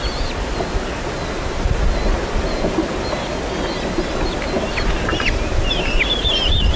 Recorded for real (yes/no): yes